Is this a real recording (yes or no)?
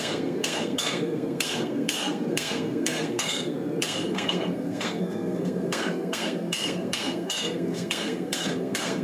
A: no